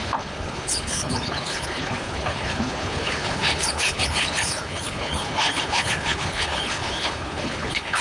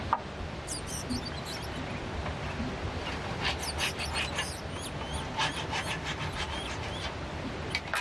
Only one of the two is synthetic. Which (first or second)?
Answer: first